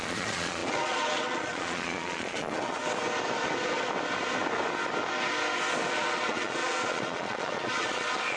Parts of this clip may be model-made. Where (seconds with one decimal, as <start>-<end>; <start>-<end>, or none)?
0.0-2.8; 5.9-8.4